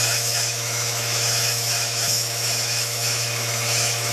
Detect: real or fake fake